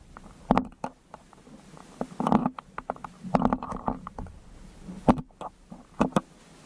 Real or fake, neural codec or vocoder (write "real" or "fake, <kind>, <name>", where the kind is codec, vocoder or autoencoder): real